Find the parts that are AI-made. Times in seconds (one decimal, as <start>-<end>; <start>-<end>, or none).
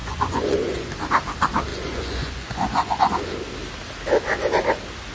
0.0-0.9; 1.7-3.1